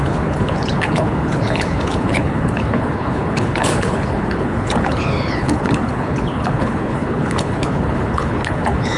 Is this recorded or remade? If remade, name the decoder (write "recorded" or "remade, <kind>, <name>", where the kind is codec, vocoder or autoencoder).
remade, codec, HILCodec